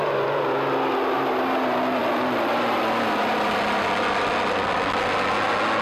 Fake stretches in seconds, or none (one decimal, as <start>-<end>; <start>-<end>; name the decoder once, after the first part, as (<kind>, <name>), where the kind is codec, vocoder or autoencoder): none